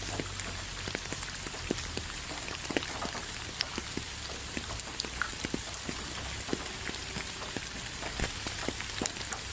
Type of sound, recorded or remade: remade